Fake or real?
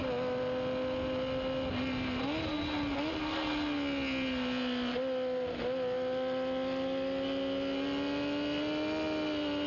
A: real